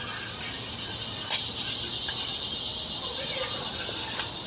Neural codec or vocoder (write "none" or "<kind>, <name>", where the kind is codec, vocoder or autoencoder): none